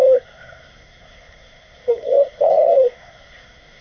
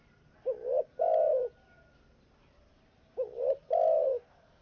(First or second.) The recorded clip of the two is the second